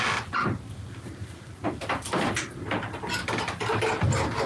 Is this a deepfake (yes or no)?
no